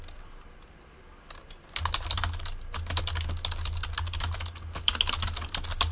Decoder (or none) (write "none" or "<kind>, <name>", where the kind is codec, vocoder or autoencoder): none